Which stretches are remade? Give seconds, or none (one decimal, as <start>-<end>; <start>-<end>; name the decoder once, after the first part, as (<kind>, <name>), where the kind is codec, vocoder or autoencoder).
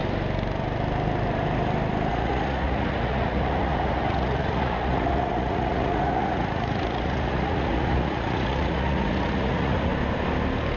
2.1-9.9 (vocoder, Vocos)